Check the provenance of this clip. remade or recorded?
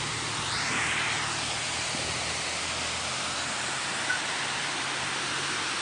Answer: recorded